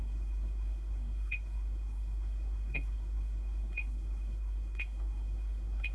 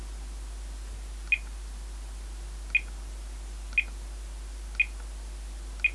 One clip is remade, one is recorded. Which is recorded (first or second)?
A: second